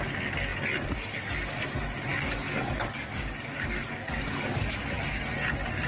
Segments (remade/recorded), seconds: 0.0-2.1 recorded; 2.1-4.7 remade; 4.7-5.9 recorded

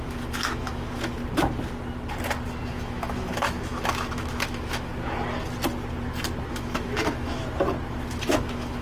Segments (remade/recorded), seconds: 0.0-1.2 remade; 1.2-2.7 recorded; 2.7-4.9 remade; 4.9-6.5 recorded; 6.5-7.4 remade; 7.4-8.1 recorded; 8.1-8.8 remade